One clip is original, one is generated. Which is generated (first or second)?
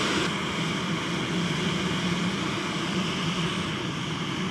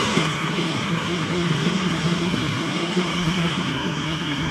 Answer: second